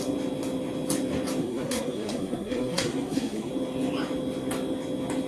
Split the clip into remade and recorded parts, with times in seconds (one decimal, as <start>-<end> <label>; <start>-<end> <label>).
0.0-1.4 recorded; 1.4-3.5 remade; 3.5-5.3 recorded